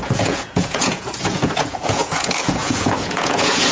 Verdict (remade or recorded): remade